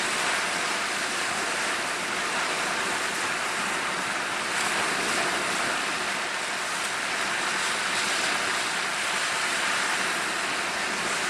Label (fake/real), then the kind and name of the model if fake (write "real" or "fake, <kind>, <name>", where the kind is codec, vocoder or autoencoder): real